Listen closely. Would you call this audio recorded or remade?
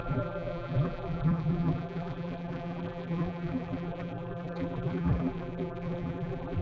remade